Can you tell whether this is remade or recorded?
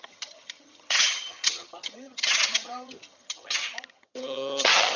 remade